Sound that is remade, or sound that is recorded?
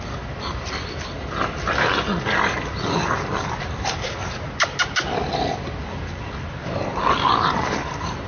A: recorded